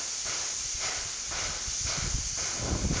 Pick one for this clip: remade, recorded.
recorded